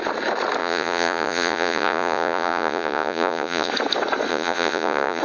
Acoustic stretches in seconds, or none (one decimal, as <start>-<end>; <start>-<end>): 0.0-0.6; 3.7-4.3